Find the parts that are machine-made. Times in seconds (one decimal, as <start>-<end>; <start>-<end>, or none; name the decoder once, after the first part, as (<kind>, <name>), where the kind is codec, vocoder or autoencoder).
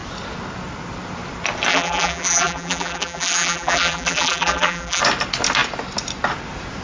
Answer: 1.7-5.0 (vocoder, BigVGAN v2)